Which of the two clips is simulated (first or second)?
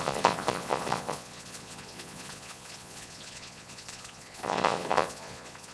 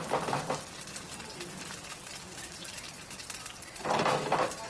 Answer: first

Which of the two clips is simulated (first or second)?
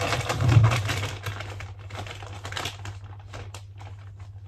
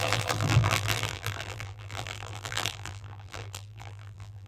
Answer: second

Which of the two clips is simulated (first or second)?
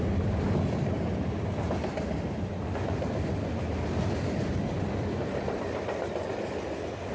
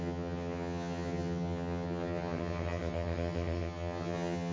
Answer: second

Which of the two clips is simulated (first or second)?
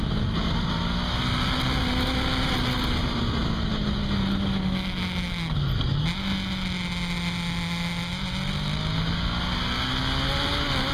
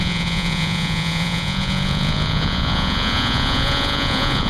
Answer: second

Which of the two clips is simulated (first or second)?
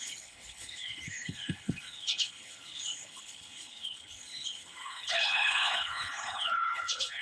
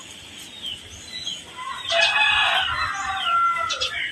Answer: first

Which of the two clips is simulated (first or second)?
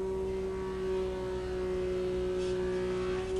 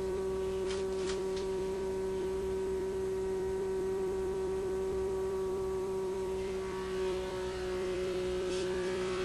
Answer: second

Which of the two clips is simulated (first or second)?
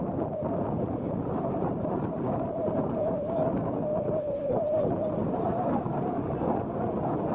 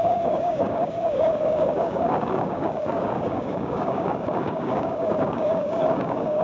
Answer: second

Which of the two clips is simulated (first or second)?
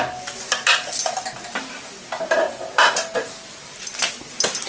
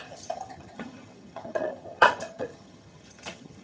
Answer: second